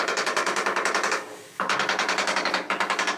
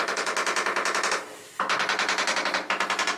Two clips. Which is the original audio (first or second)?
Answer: second